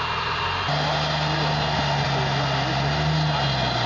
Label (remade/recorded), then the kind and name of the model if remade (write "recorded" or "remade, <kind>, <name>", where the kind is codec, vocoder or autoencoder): recorded